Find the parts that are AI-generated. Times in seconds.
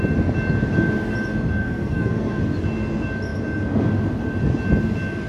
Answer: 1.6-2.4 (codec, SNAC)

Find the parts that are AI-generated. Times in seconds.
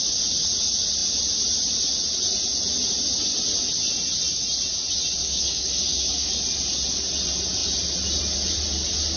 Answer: 5.2-6.4 (codec, DAC)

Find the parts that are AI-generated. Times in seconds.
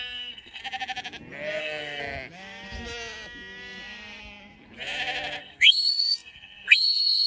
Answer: 0.0-0.6 (codec, SNAC); 1.6-2.0; 5.4-7.3